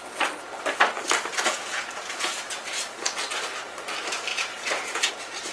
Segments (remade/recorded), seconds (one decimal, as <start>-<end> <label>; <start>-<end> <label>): 0.0-1.3 recorded; 1.3-2.6 remade; 2.6-4.3 recorded; 4.3-5.1 remade; 5.1-5.5 recorded